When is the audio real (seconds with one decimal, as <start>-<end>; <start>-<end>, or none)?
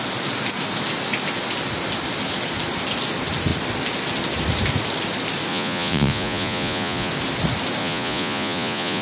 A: 0.0-5.5; 7.1-7.8